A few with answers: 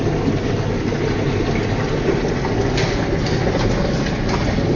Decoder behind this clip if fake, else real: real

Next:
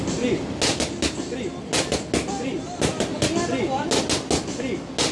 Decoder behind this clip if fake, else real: real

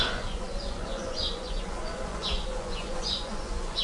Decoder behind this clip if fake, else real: fake, vocoder, Vocos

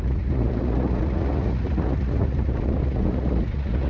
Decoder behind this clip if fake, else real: fake, vocoder, Vocos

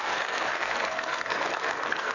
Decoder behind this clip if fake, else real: fake, codec, SNAC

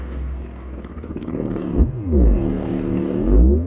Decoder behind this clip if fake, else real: fake, codec, DAC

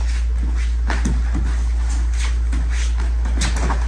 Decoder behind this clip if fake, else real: real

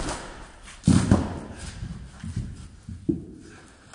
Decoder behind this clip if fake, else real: real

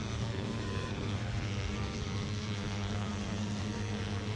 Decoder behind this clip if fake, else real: fake, codec, SNAC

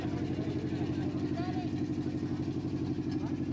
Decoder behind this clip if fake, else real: real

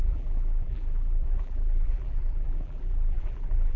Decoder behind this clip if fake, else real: fake, vocoder, BigVGAN v2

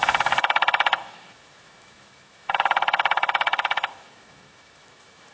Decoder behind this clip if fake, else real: fake, autoencoder, DAC-VAE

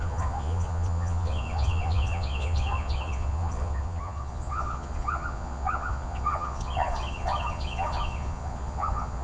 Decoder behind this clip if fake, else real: fake, vocoder, Vocos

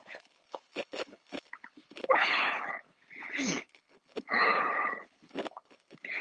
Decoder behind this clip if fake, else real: fake, codec, HILCodec